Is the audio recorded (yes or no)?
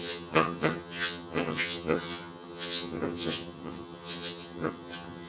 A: no